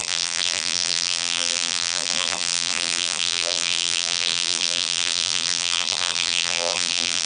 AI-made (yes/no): yes